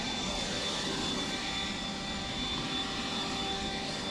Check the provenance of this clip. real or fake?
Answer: real